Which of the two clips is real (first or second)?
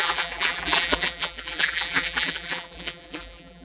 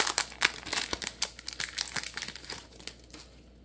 second